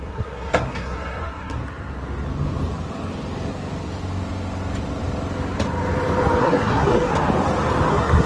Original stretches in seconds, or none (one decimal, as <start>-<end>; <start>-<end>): 1.6-6.4; 7.1-7.9